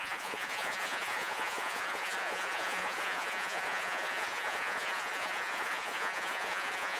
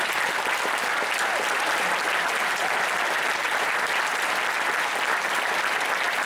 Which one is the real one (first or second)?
second